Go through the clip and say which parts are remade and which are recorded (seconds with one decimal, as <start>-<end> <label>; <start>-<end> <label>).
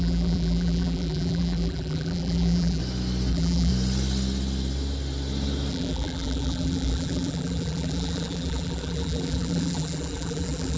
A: 0.0-2.8 remade; 2.8-3.3 recorded; 3.3-3.7 remade; 3.7-5.7 recorded; 5.7-10.8 remade